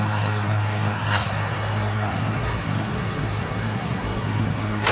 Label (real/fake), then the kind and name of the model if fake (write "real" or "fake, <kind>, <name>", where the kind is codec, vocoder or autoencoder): fake, codec, SNAC